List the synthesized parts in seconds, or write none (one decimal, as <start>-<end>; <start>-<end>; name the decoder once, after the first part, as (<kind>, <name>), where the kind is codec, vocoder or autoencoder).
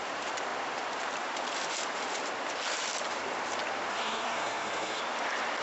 3.9-5.0 (codec, SNAC)